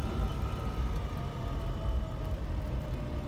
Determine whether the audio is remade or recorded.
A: recorded